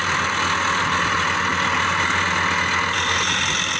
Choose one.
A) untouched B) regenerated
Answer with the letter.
A